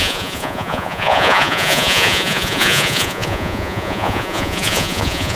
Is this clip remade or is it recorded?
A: remade